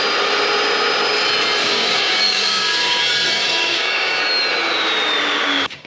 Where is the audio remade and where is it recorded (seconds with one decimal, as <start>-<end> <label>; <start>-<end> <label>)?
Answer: 0.0-1.6 recorded; 1.6-3.0 remade; 3.0-3.6 recorded; 3.6-4.2 remade; 4.2-5.4 recorded; 5.4-5.9 remade